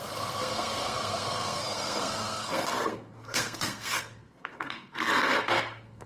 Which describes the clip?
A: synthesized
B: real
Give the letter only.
A